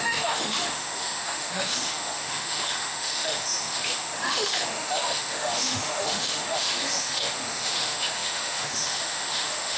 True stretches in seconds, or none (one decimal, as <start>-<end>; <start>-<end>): none